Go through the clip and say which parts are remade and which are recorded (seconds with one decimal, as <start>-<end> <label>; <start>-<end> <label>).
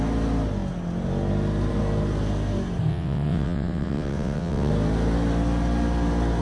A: 0.0-2.9 recorded; 2.9-4.7 remade; 4.7-6.4 recorded